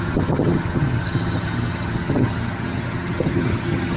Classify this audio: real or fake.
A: fake